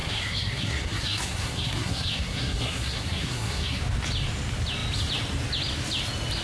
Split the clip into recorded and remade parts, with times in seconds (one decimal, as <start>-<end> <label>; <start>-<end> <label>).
0.0-3.8 remade; 3.8-6.4 recorded